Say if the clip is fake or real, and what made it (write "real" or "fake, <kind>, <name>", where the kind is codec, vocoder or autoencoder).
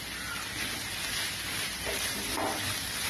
real